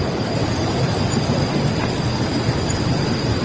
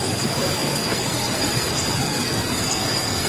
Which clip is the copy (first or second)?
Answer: second